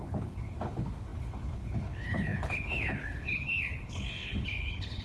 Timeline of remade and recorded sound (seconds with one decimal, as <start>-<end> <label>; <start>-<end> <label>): 0.0-5.0 remade